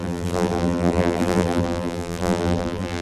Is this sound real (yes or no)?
no